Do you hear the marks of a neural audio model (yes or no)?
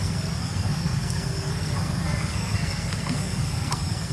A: yes